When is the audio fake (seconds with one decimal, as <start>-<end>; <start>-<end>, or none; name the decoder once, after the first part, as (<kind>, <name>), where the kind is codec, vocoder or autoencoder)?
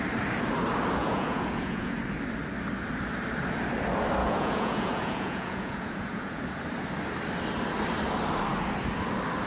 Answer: 1.0-2.0 (vocoder, Vocos); 4.2-6.4